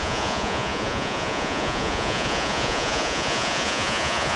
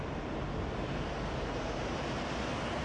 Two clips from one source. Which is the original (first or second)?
second